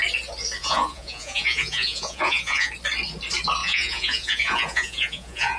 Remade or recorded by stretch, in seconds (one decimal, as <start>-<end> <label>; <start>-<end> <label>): 0.0-0.6 recorded; 0.6-2.7 remade; 2.7-3.6 recorded; 3.6-5.6 remade